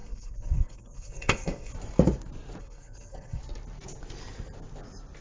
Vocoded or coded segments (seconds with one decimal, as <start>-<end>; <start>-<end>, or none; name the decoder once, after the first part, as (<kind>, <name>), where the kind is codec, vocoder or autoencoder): 0.0-1.7 (codec, SNAC); 2.6-3.4